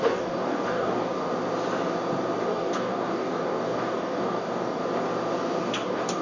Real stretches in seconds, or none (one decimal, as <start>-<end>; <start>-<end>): 1.3-2.4; 4.8-5.6